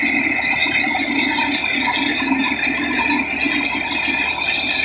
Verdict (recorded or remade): recorded